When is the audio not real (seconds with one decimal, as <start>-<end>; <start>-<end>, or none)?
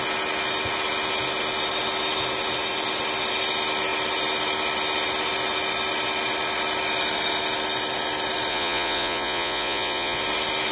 8.5-10.2